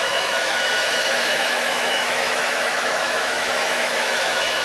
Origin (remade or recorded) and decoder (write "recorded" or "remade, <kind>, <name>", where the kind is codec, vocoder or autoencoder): remade, autoencoder, DAC-VAE